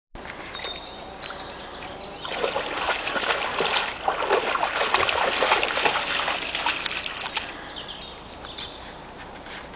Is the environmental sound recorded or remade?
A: recorded